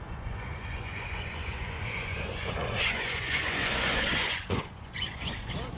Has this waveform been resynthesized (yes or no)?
yes